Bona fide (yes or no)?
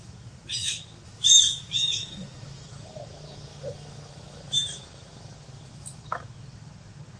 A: no